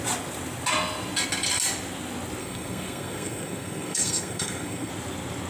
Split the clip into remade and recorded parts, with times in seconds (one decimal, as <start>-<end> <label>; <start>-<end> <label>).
0.0-2.4 recorded; 2.4-4.9 remade; 4.9-5.5 recorded